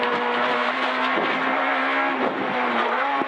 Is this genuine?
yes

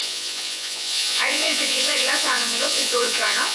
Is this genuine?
no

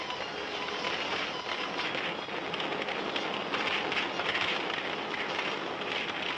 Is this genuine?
yes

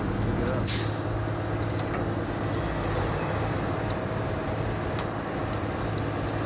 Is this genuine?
yes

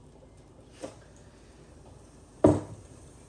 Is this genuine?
no